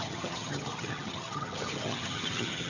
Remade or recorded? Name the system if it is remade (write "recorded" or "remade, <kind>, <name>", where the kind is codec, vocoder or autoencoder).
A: remade, vocoder, HiFi-GAN